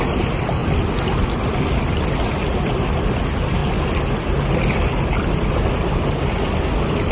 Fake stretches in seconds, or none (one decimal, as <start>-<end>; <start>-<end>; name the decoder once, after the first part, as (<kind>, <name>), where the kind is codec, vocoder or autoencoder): none